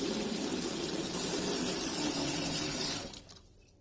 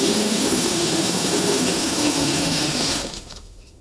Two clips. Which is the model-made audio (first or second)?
second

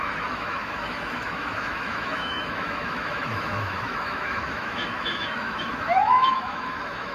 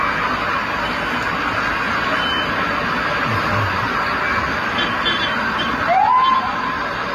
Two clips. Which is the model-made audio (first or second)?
first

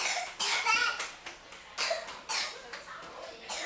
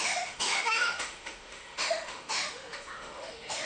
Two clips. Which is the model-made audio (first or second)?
second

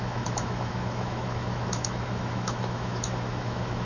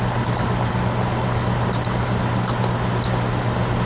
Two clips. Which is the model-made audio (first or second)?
first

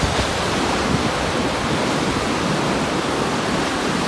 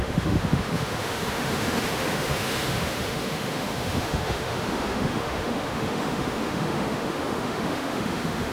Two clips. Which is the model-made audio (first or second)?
second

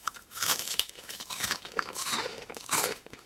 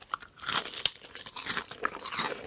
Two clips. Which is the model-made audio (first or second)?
first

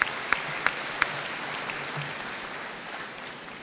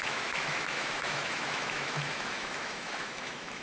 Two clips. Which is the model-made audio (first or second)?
second